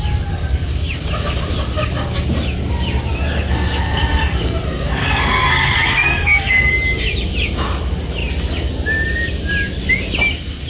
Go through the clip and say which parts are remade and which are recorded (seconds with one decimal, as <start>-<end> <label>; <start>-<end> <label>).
0.0-3.3 recorded; 3.3-6.7 remade; 6.7-10.7 recorded